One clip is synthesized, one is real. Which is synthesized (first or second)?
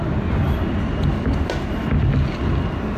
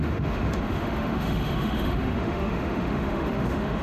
second